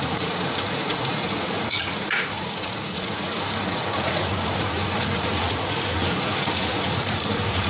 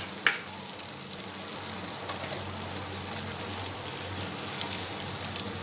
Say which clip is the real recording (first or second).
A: second